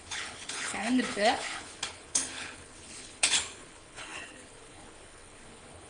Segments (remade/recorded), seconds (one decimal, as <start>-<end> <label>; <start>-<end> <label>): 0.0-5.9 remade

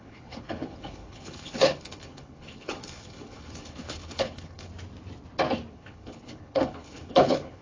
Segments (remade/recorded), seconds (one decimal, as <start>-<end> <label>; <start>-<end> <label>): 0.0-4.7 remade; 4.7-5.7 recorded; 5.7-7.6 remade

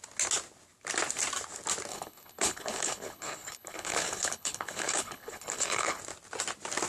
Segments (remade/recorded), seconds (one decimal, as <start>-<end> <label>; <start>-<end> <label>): 0.0-1.9 recorded; 1.9-6.0 remade; 6.0-6.9 recorded

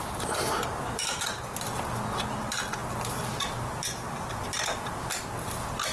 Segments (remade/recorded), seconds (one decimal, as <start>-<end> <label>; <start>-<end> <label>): 0.0-5.9 recorded

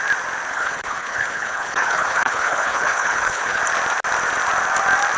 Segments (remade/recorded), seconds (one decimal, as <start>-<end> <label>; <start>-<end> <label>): 0.0-0.5 recorded; 0.5-3.6 remade; 3.6-5.2 recorded

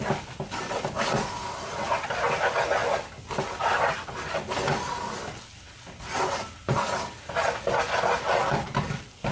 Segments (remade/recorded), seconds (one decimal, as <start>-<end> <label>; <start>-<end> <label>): 0.0-9.3 recorded